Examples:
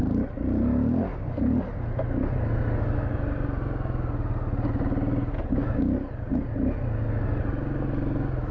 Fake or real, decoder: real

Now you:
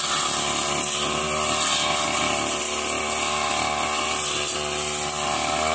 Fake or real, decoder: real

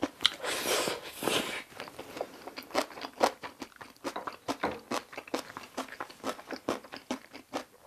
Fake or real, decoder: fake, vocoder, BigVGAN v2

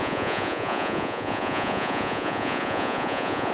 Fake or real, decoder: fake, vocoder, Vocos